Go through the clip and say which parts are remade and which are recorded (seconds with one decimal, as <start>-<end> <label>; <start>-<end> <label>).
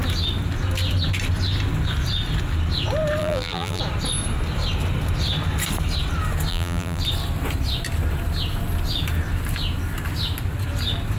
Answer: 0.0-3.2 recorded; 3.2-3.8 remade; 3.8-6.5 recorded; 6.5-7.0 remade; 7.0-11.2 recorded